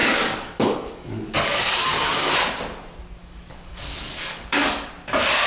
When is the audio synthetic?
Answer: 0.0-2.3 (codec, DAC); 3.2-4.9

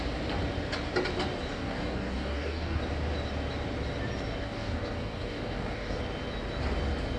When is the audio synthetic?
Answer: 1.5-2.8 (codec, DAC); 4.4-6.0